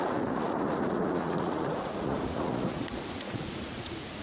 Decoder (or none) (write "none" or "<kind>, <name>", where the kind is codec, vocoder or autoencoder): vocoder, Vocos